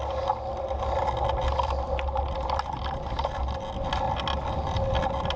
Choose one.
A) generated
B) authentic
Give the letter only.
B